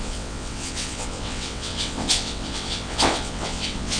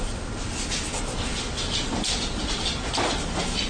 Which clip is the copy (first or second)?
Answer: first